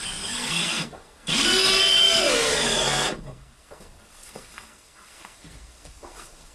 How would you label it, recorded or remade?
remade